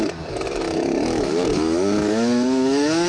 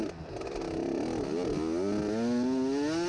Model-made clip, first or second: first